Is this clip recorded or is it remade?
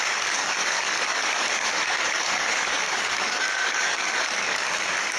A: remade